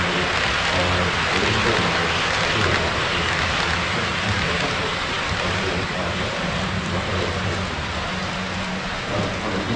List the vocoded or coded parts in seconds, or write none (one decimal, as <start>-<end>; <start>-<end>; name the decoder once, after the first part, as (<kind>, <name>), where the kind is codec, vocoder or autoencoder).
4.1-6.8 (vocoder, BigVGAN v2)